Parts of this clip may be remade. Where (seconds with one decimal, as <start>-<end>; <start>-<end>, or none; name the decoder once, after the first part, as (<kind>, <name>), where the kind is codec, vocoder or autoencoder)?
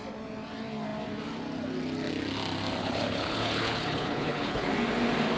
2.8-4.7 (codec, HILCodec)